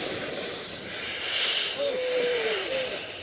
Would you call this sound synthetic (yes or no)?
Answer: yes